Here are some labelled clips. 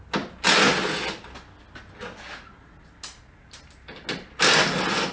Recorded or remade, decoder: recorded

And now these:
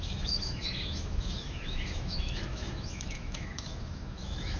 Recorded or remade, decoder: remade, autoencoder, DAC-VAE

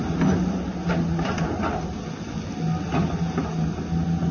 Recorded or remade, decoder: recorded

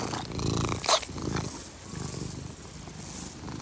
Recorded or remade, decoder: recorded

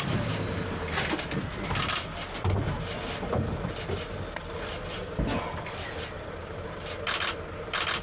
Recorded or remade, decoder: recorded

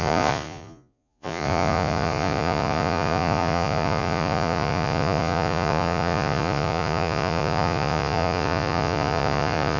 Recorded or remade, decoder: remade, vocoder, Vocos